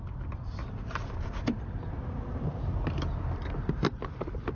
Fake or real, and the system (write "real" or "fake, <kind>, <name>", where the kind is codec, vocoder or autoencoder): fake, vocoder, BigVGAN v2